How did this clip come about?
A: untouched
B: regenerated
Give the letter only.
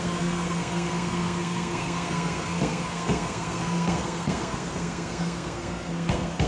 B